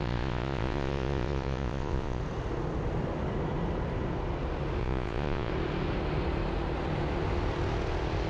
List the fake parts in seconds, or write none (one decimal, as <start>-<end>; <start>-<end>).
0.0-2.2; 4.8-5.5